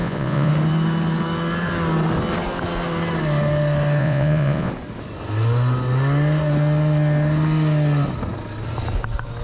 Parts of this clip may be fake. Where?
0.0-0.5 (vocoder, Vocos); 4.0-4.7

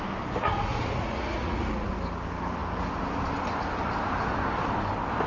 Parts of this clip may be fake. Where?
0.4-1.9 (vocoder, Vocos)

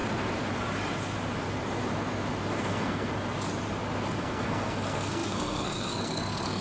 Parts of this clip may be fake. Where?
2.6-3.1 (codec, SNAC); 4.2-6.6

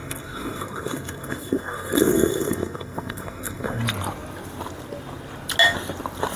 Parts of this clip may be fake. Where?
0.0-3.8 (codec, SNAC)

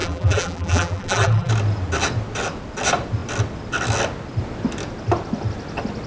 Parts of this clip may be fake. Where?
0.0-1.5 (vocoder, BigVGAN v2)

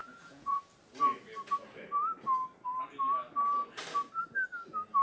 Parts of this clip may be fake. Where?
0.0-0.6 (vocoder, Vocos)